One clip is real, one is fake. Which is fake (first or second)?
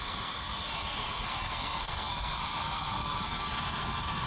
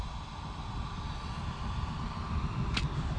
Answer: first